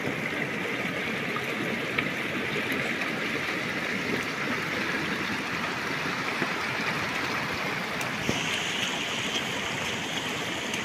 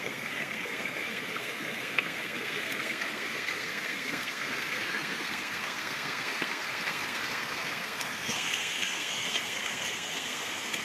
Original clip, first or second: first